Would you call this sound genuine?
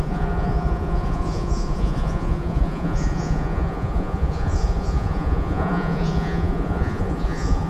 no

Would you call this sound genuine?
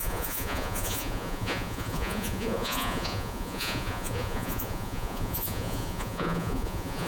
no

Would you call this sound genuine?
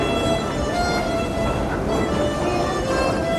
yes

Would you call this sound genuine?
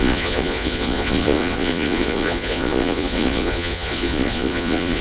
no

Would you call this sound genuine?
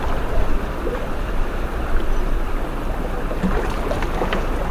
yes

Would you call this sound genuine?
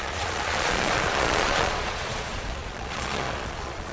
no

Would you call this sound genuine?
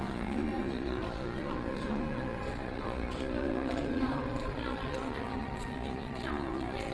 no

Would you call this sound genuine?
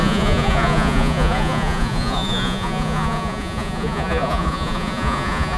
no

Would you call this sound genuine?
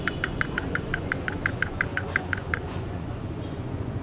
no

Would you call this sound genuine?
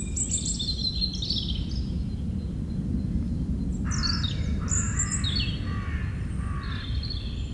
yes